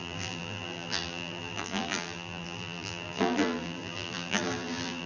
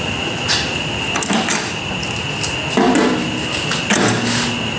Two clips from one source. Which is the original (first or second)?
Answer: second